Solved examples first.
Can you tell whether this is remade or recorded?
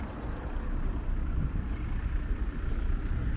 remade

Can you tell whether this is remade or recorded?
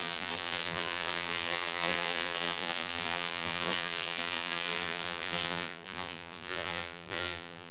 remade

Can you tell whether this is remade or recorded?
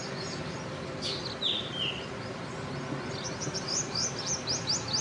recorded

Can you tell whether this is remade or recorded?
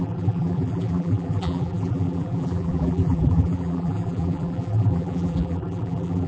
remade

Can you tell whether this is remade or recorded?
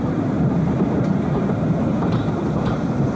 remade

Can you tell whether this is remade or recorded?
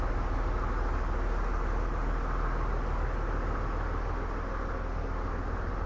recorded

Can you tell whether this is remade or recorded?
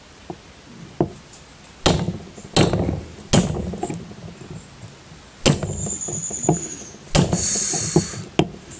recorded